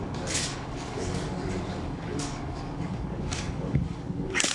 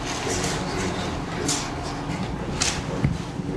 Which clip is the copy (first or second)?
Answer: first